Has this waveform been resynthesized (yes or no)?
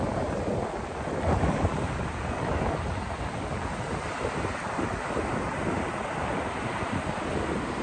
no